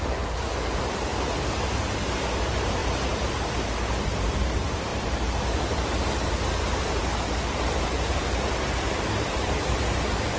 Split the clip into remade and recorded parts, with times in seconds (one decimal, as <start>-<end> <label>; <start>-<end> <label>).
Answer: 0.0-1.1 remade; 1.1-1.8 recorded; 1.8-10.4 remade

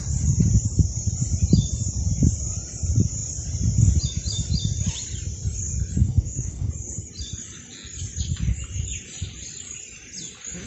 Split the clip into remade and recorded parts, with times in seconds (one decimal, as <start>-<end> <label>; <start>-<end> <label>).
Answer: 0.0-6.0 recorded; 6.0-6.7 remade; 6.7-10.7 recorded

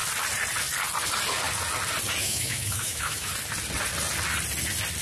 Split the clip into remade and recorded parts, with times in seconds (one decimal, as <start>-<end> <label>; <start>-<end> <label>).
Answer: 0.0-2.2 recorded; 2.2-3.3 remade; 3.3-5.0 recorded

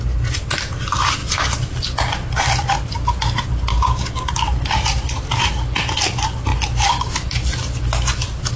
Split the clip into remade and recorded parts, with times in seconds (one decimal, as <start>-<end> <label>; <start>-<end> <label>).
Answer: 0.0-3.7 recorded; 3.7-4.3 remade; 4.3-8.6 recorded

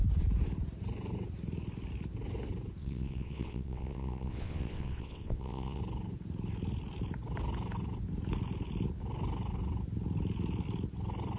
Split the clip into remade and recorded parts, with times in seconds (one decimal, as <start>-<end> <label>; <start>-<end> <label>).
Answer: 0.0-2.8 recorded; 2.8-5.8 remade; 5.8-11.4 recorded

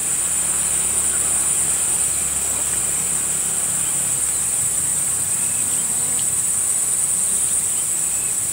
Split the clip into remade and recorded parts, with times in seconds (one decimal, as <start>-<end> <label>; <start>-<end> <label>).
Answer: 0.0-2.8 recorded; 2.8-3.4 remade; 3.4-4.9 recorded; 4.9-5.5 remade; 5.5-8.5 recorded